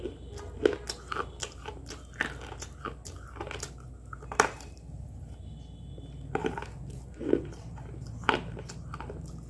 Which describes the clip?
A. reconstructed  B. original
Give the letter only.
B